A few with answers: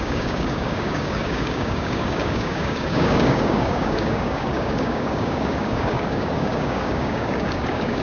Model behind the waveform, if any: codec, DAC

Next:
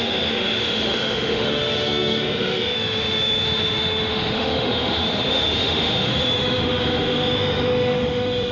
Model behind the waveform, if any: autoencoder, DAC-VAE